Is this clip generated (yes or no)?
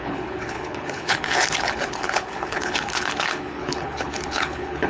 yes